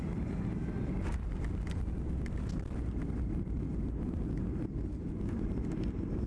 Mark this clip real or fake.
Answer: real